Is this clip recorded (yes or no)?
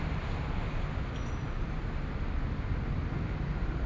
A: yes